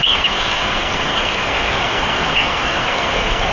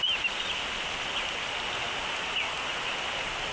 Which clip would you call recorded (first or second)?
second